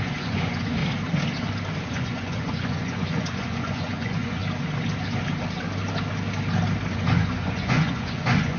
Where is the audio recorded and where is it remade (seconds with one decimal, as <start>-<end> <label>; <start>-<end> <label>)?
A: 0.0-0.8 remade; 0.8-1.9 recorded; 1.9-4.4 remade; 4.4-6.9 recorded; 6.9-8.6 remade